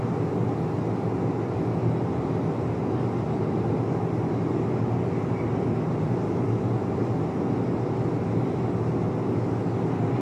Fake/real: real